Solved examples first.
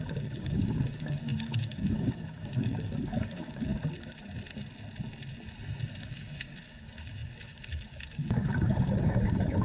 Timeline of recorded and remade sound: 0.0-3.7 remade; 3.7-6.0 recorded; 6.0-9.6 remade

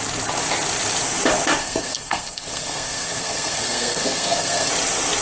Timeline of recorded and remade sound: 0.0-1.6 recorded; 1.6-4.7 remade; 4.7-5.2 recorded

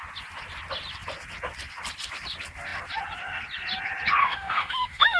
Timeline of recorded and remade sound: 0.0-4.2 recorded; 4.2-5.2 remade

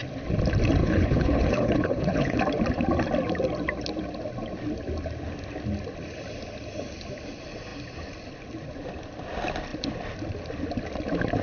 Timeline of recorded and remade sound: 0.0-0.8 recorded; 0.8-2.4 remade; 2.4-11.4 recorded

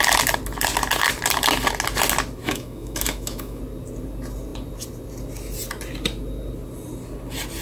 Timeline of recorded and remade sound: 0.0-2.4 recorded; 2.4-3.6 remade; 3.6-7.6 recorded

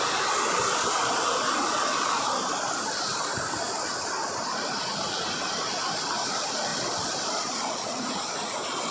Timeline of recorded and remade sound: 0.0-8.9 recorded